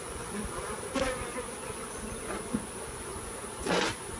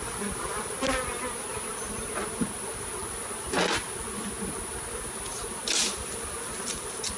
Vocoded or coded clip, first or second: first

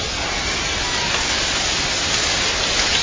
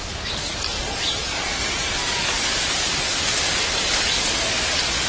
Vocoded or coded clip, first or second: second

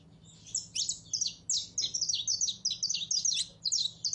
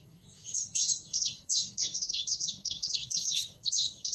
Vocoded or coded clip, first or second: second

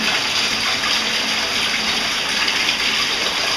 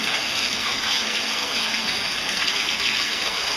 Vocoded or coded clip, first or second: second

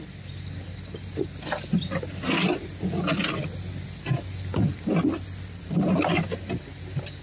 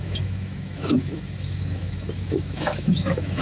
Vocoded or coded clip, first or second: second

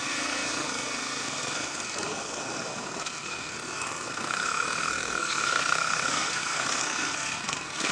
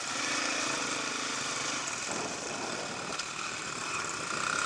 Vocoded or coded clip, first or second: first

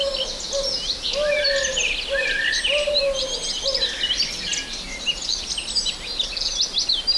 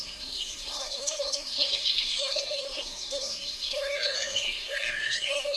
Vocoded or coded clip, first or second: second